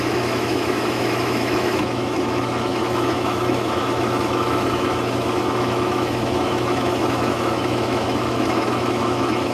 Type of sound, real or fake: fake